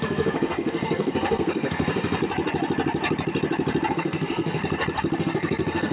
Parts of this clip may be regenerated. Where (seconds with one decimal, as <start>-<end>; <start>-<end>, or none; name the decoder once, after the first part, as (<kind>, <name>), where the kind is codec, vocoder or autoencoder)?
0.0-2.2 (codec, SNAC); 3.9-4.6; 5.2-5.9